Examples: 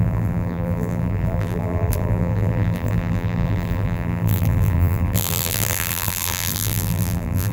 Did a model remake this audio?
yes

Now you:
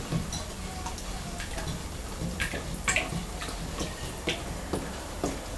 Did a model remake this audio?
no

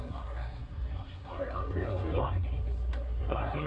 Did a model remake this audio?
yes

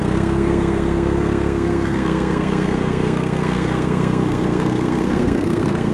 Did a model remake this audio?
yes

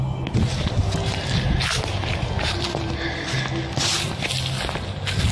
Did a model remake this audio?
no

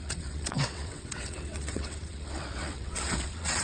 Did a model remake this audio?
yes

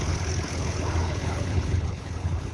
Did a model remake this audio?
yes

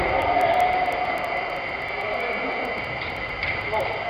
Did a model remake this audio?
no